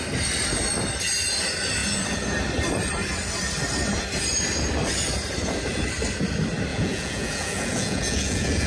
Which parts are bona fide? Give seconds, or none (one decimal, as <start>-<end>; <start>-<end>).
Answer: 0.0-6.7